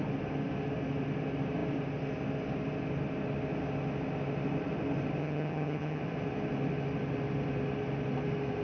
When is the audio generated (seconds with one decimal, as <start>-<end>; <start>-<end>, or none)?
5.2-6.0